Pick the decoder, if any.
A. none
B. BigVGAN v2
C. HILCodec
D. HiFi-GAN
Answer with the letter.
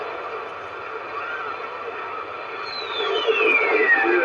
A